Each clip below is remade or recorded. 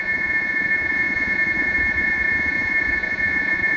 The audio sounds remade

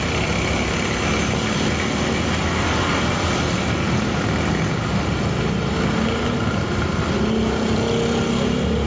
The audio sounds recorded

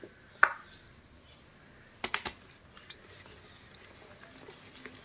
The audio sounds recorded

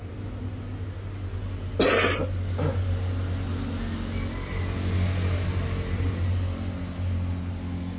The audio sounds recorded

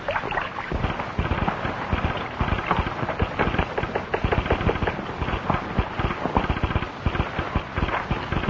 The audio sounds recorded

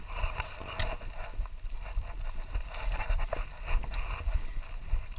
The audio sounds recorded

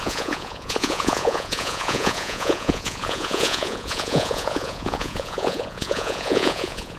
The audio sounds remade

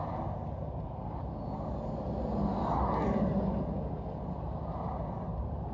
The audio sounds recorded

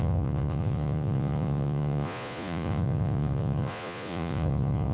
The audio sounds remade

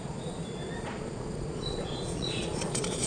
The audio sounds remade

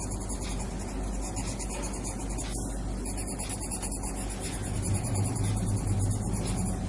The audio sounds recorded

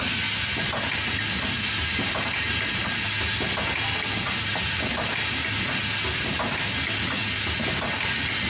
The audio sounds recorded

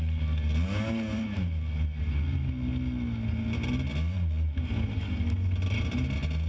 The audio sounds recorded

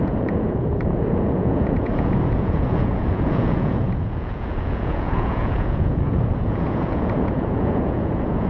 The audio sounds remade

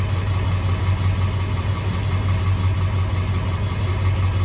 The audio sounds recorded